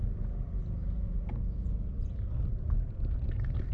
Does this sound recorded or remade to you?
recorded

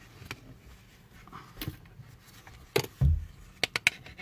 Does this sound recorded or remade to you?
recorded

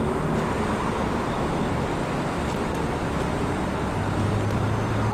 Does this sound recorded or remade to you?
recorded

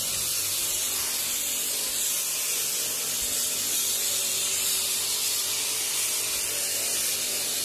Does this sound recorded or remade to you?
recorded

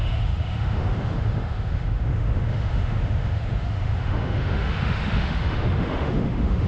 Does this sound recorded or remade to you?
remade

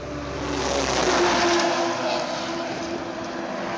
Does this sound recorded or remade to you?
recorded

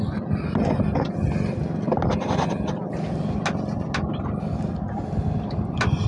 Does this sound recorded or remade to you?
recorded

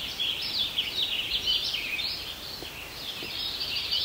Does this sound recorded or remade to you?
recorded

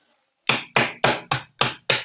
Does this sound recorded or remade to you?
recorded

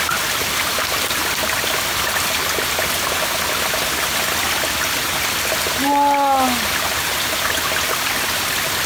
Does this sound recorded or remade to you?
recorded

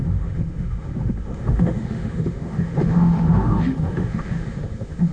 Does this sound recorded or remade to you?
remade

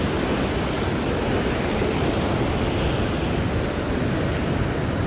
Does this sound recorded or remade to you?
recorded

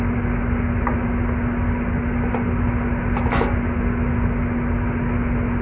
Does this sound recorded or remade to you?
recorded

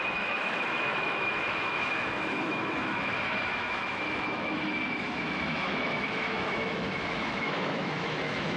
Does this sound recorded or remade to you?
remade